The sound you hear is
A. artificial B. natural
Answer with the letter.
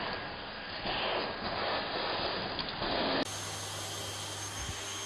B